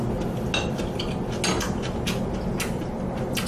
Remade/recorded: recorded